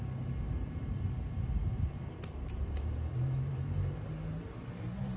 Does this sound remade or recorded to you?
remade